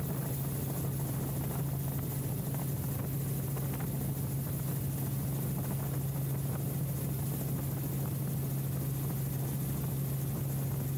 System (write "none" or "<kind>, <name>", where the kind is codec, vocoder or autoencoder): none